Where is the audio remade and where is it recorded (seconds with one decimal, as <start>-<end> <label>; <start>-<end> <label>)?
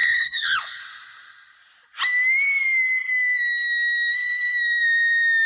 0.0-0.8 remade; 0.8-5.5 recorded